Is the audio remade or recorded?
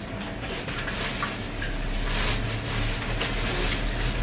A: recorded